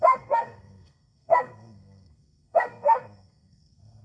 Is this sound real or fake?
fake